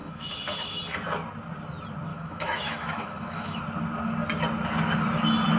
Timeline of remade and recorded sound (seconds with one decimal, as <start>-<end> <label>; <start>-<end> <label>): 0.0-0.8 remade; 0.8-2.1 recorded; 2.1-3.6 remade; 3.6-5.6 recorded